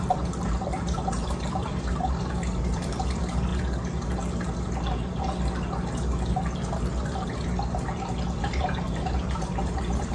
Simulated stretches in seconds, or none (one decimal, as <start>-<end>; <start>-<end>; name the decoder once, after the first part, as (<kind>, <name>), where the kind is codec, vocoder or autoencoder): 0.0-3.5 (vocoder, BigVGAN v2); 8.4-10.1